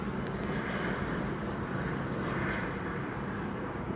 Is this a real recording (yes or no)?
no